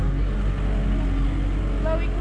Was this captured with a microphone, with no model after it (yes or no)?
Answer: yes